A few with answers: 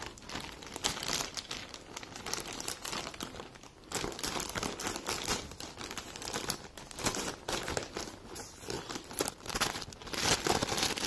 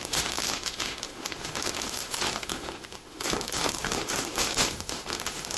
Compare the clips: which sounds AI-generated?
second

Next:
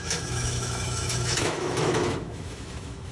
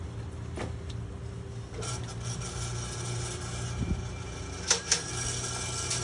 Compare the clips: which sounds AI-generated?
first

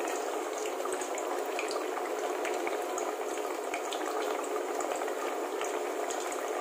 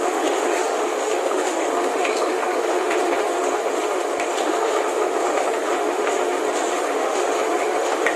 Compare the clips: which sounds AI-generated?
second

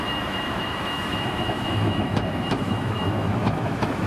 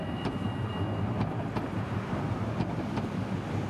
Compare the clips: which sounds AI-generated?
first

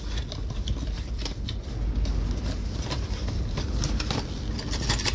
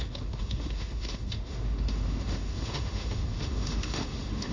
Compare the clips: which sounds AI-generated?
second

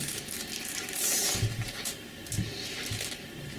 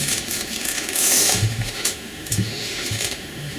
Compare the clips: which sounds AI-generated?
second